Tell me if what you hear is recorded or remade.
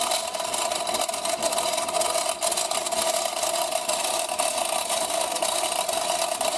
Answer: recorded